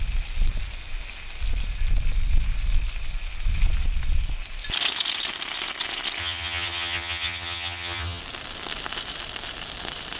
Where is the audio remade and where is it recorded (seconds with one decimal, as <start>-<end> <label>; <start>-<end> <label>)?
0.0-6.2 recorded; 6.2-8.2 remade; 8.2-10.2 recorded